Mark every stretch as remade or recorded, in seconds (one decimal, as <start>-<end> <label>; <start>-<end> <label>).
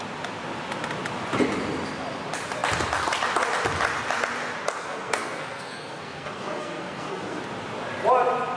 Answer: 0.0-4.8 recorded; 4.8-7.4 remade; 7.4-8.6 recorded